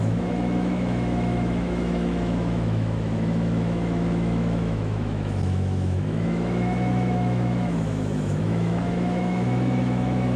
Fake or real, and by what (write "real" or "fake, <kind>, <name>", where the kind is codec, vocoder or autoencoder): fake, autoencoder, DAC-VAE